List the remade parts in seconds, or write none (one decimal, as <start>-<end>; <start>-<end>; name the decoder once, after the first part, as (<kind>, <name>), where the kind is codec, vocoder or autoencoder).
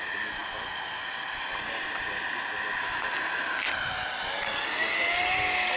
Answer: none